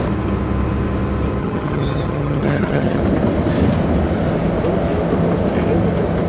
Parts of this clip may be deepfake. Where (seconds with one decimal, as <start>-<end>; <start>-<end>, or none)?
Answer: 1.4-3.0